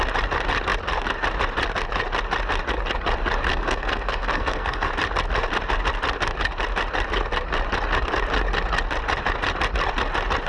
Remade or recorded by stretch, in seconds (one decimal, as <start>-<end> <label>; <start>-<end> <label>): 0.0-3.5 recorded; 3.5-4.9 remade; 4.9-10.5 recorded